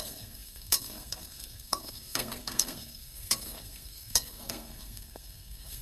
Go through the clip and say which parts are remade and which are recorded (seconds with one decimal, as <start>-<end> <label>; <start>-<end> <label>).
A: 0.0-5.8 remade